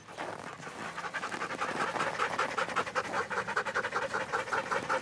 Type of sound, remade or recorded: recorded